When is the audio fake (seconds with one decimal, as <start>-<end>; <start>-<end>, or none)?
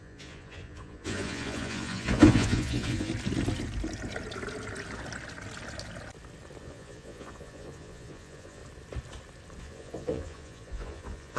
0.0-3.1; 6.6-8.6; 9.6-11.4